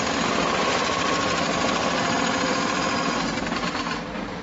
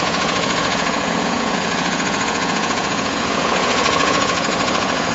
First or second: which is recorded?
first